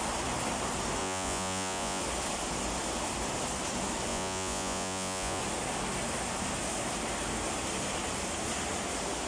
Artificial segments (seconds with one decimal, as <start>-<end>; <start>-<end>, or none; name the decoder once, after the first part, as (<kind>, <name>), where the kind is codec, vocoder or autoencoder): 1.0-2.0 (vocoder, Vocos); 4.1-5.4